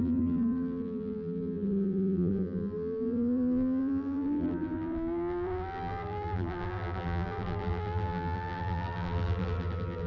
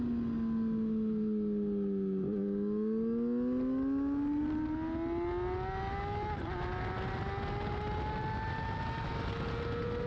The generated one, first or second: first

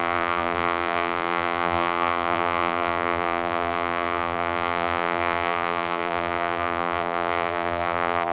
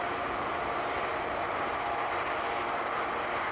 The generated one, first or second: first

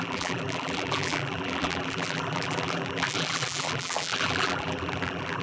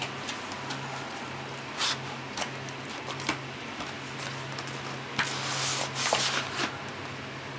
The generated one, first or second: first